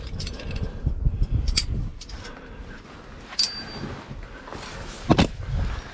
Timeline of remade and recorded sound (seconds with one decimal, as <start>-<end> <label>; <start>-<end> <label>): 0.0-5.9 recorded